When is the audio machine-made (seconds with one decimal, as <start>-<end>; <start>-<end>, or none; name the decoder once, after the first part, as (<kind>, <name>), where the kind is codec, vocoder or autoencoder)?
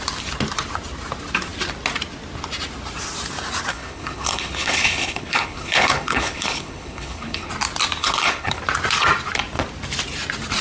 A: 3.7-7.5 (codec, HILCodec); 8.0-8.6